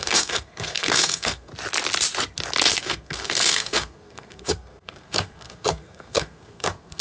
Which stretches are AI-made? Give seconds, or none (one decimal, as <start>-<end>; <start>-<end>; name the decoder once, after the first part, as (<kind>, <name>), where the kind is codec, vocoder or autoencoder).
0.0-1.5 (codec, SNAC); 2.8-7.0